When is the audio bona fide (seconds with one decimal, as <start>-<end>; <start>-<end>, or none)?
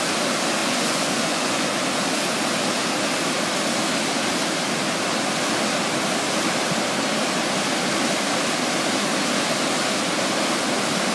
0.0-0.6; 1.8-11.1